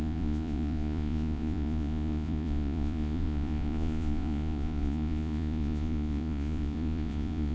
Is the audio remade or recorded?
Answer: remade